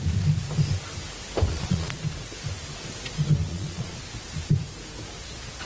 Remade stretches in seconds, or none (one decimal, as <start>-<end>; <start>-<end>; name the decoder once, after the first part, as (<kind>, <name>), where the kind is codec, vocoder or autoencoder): 1.5-2.0 (vocoder, Vocos); 3.5-4.0